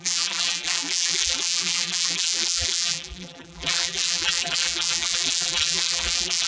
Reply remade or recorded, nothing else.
remade